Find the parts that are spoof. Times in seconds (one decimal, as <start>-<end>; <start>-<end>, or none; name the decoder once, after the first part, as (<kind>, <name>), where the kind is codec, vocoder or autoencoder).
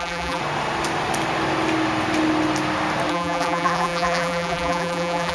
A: 0.0-0.4 (vocoder, BigVGAN v2); 3.1-5.3